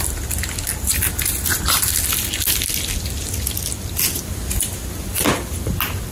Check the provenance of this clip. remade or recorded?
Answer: recorded